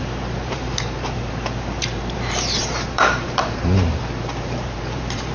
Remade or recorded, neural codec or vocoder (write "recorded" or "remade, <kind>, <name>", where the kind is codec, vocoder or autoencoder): remade, vocoder, BigVGAN v2